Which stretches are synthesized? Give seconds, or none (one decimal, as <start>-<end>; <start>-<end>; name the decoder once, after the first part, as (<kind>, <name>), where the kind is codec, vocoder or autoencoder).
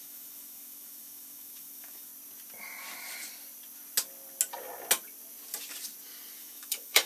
0.0-2.1 (autoencoder, DAC-VAE); 6.4-7.1